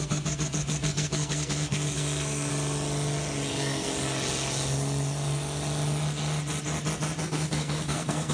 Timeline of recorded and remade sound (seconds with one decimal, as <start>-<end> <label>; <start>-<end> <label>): 0.0-2.5 remade; 2.5-3.5 recorded; 3.5-3.9 remade; 3.9-7.2 recorded; 7.2-8.3 remade